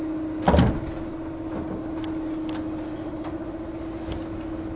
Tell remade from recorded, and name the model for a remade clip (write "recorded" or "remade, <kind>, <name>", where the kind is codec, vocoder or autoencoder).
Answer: recorded